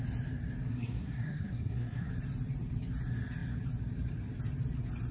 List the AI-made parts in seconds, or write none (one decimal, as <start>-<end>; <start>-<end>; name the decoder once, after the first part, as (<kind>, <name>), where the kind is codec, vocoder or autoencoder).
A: 0.7-2.1 (codec, SNAC)